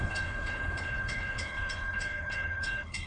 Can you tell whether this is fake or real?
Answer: fake